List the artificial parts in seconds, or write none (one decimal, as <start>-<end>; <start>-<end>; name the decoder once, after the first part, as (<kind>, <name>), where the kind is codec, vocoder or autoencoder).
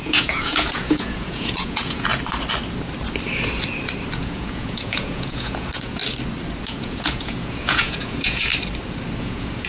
0.0-2.1 (vocoder, Vocos); 4.1-6.0; 6.6-8.5; 9.2-9.7